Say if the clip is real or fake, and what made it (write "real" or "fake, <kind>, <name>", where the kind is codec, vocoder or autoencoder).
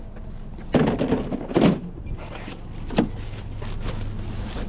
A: real